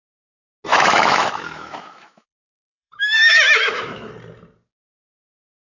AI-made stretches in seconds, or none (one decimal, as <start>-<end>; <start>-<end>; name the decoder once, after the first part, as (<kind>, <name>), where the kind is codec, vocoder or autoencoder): 0.7-4.1 (autoencoder, DAC-VAE)